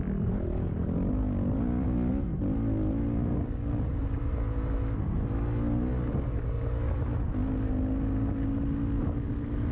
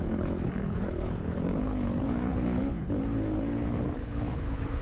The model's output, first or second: second